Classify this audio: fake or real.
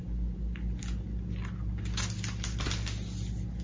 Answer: real